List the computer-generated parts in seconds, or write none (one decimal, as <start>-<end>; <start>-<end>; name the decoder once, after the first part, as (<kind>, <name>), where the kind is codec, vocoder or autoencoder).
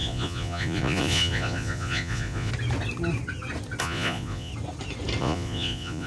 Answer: 0.0-2.5 (vocoder, Vocos); 3.8-4.5; 5.2-6.1